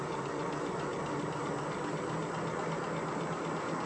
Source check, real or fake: real